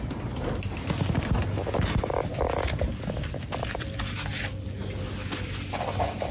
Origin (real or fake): real